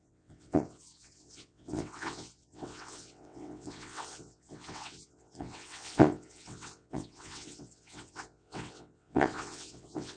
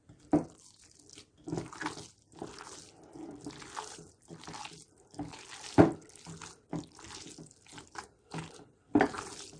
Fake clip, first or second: first